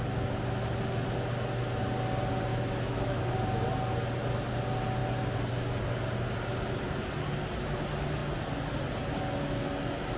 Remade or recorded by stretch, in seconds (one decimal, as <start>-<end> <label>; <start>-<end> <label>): 0.0-2.5 recorded; 2.5-3.3 remade; 3.3-10.2 recorded